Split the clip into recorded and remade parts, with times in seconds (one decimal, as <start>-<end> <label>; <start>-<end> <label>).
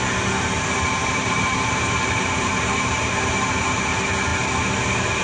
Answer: 0.0-1.0 recorded; 1.0-3.3 remade; 3.3-5.2 recorded